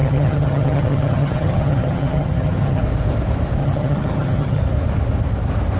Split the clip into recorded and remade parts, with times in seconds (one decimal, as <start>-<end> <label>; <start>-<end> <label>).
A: 0.0-2.8 remade; 2.8-3.6 recorded; 3.6-4.6 remade; 4.6-5.8 recorded

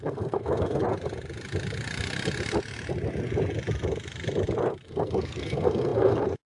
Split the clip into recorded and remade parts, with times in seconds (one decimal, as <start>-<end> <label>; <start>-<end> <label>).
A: 0.0-0.8 remade; 0.8-4.8 recorded; 4.8-6.6 remade

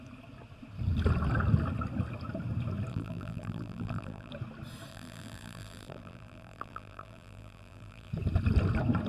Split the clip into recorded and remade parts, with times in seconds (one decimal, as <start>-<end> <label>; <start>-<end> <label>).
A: 0.0-2.9 recorded; 2.9-4.3 remade; 4.3-4.9 recorded; 4.9-8.1 remade; 8.1-9.1 recorded

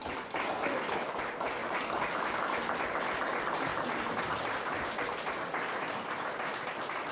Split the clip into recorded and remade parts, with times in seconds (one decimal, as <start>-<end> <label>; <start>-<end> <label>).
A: 0.0-1.1 remade; 1.1-1.6 recorded; 1.6-2.1 remade; 2.1-7.1 recorded

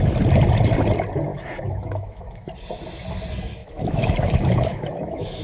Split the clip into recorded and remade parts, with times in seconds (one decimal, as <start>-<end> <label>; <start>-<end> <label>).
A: 0.0-1.3 recorded; 1.3-2.5 remade; 2.5-3.6 recorded; 3.6-5.4 remade

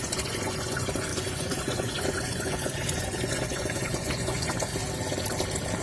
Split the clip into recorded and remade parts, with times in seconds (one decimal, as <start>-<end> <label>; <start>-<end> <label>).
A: 0.0-4.7 remade; 4.7-5.8 recorded

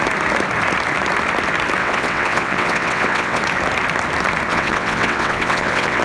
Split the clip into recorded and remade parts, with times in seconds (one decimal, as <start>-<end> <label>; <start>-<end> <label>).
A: 0.0-1.8 recorded; 1.8-3.4 remade; 3.4-4.5 recorded; 4.5-6.0 remade